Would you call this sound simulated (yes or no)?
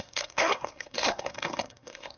yes